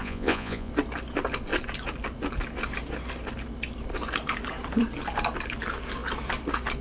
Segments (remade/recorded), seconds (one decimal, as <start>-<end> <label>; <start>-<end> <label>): 0.0-0.7 remade; 0.7-6.8 recorded

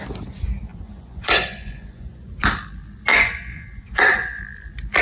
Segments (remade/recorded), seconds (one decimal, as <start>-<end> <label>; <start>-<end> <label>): 0.0-0.7 recorded; 0.7-2.3 remade; 2.3-3.1 recorded; 3.1-4.4 remade; 4.4-5.0 recorded